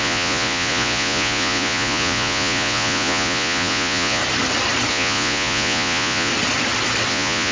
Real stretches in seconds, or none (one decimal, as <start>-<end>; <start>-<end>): 4.2-4.9; 6.3-7.1